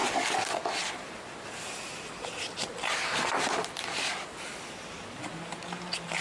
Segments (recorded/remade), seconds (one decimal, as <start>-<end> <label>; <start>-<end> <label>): 0.0-6.2 recorded